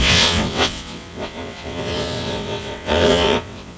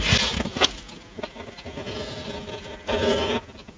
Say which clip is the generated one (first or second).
first